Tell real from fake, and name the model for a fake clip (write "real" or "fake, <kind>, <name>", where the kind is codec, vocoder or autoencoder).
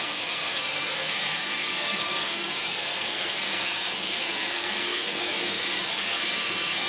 fake, codec, SNAC